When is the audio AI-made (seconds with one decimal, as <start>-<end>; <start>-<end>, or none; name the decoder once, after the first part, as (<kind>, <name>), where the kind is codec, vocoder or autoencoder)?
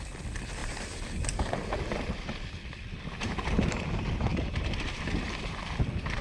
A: 0.6-1.8 (vocoder, BigVGAN v2); 2.9-3.7; 4.3-5.6